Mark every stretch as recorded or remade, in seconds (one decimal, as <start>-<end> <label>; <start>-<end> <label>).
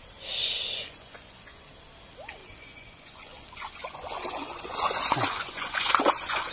0.0-0.4 recorded; 0.4-1.7 remade; 1.7-2.4 recorded; 2.4-6.5 remade